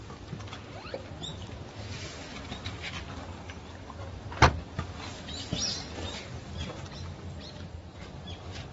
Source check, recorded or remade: recorded